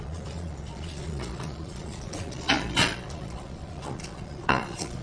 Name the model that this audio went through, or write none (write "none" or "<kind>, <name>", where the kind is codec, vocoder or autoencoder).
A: vocoder, Vocos